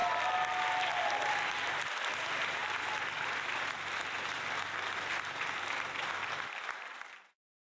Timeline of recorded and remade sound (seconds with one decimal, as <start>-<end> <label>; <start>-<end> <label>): 0.0-1.3 recorded; 1.3-2.6 remade; 2.6-6.3 recorded; 6.3-7.7 remade